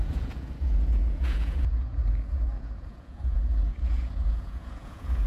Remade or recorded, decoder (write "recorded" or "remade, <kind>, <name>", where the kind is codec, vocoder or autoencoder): remade, vocoder, Vocos